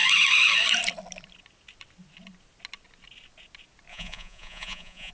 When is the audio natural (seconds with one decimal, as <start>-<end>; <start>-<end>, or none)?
0.0-3.9